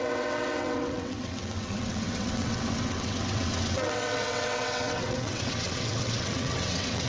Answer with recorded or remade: remade